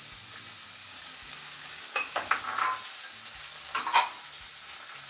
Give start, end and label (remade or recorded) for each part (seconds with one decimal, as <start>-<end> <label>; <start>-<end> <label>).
0.0-0.8 recorded; 0.8-2.3 remade; 2.3-3.0 recorded; 3.0-3.8 remade; 3.8-5.1 recorded